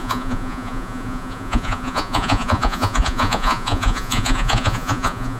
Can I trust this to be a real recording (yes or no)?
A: no